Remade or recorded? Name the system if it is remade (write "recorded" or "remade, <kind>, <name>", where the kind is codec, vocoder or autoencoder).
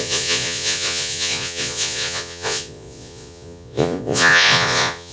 remade, vocoder, Vocos